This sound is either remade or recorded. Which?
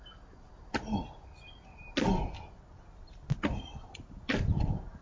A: recorded